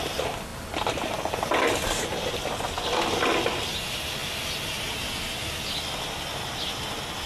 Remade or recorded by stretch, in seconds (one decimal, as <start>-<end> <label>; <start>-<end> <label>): 0.0-7.3 recorded